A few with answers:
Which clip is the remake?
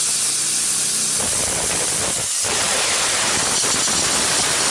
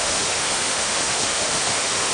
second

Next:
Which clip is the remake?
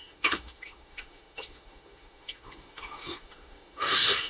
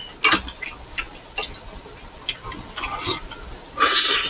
first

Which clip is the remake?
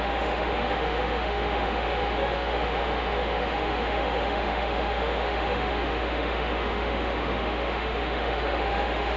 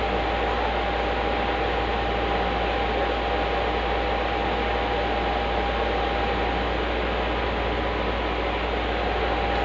first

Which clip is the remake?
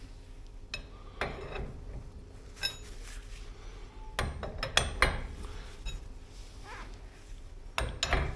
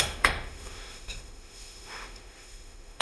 second